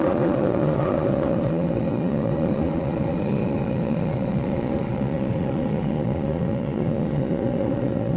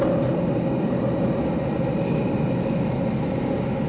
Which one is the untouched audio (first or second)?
second